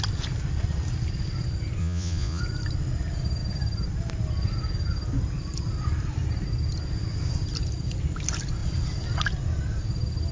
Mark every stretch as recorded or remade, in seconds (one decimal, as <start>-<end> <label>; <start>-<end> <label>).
0.0-1.8 recorded; 1.8-2.4 remade; 2.4-10.3 recorded